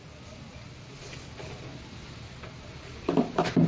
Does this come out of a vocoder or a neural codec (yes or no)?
no